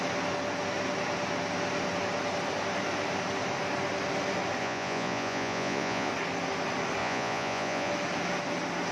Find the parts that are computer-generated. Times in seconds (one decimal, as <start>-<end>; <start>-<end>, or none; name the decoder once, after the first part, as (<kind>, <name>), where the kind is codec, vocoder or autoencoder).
4.6-6.1 (vocoder, Vocos); 7.0-7.9

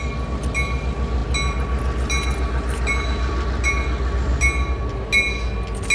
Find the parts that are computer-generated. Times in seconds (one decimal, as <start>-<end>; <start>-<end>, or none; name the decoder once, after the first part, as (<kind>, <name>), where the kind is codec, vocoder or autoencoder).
none

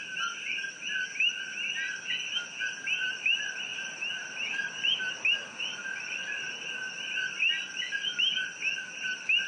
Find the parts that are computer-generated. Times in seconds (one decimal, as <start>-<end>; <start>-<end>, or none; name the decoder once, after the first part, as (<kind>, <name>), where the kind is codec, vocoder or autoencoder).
none

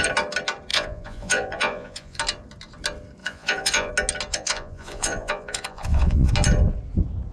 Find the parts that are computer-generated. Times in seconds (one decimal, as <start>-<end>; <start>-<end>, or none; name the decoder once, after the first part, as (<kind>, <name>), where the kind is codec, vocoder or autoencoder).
0.7-2.2 (vocoder, Vocos); 3.2-3.9; 4.3-6.3

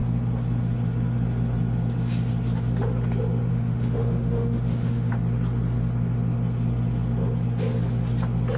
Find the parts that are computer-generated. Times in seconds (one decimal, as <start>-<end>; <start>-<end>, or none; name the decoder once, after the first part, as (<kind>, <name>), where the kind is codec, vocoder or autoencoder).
3.5-5.1 (autoencoder, DAC-VAE)

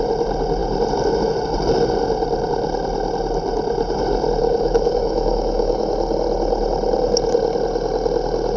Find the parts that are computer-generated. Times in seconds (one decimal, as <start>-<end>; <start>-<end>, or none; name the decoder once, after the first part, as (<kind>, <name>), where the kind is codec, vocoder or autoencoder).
4.4-5.9 (autoencoder, DAC-VAE)

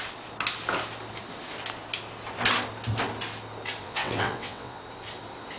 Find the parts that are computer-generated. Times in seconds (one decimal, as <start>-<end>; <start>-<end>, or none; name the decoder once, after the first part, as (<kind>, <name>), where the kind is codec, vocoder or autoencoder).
3.8-4.8 (vocoder, WaveNeXt)

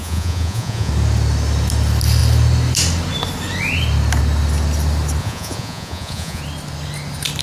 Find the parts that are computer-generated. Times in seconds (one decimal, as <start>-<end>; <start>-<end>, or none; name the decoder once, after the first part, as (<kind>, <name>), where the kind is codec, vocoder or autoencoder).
0.0-0.9 (vocoder, Vocos); 5.2-6.4